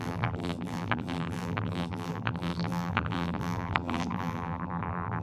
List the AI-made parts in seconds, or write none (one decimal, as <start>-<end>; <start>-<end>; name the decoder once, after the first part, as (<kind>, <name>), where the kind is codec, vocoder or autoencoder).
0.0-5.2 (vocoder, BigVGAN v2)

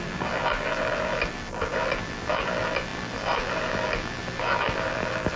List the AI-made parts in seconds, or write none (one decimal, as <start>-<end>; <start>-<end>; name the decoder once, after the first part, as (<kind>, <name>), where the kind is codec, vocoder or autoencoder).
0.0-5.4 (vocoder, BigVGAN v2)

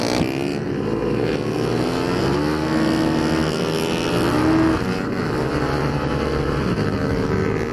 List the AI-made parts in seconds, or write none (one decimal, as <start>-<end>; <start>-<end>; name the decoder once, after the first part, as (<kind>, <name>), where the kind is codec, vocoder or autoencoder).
none

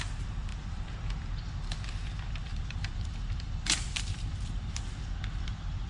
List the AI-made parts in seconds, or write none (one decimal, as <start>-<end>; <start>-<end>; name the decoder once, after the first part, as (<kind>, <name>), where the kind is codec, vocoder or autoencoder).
0.5-1.2 (vocoder, BigVGAN v2); 2.5-4.8

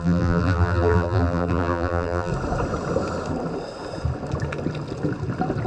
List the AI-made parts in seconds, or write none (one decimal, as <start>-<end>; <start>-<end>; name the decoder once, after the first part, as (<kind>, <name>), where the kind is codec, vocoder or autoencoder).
0.0-2.3 (vocoder, BigVGAN v2)

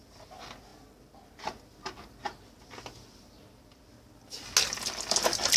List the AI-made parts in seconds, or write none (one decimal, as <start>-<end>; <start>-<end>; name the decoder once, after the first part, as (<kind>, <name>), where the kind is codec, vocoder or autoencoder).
none